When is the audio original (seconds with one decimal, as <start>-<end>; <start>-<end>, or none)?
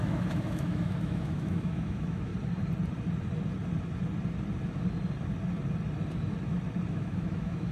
2.3-6.9